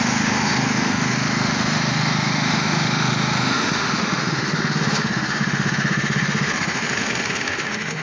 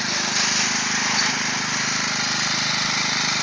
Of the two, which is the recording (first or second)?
second